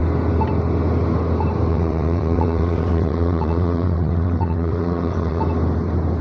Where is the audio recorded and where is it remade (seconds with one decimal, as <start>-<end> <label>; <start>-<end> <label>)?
0.0-1.7 recorded; 1.7-5.4 remade; 5.4-6.2 recorded